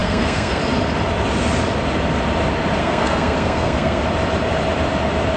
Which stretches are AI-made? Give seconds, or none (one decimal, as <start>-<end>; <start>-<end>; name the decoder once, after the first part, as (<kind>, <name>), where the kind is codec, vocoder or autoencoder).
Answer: 0.0-0.6 (codec, SNAC); 2.8-4.0